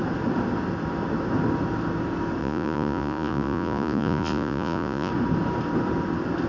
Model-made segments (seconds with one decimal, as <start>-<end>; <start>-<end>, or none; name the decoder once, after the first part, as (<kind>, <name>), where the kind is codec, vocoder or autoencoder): 2.4-5.1 (vocoder, Vocos)